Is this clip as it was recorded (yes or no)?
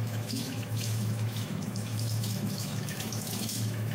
no